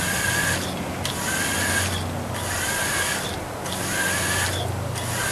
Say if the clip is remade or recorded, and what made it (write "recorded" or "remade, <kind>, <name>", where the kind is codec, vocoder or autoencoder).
recorded